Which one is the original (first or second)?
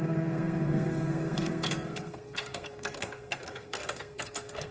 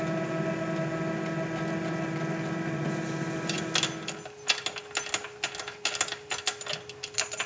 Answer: second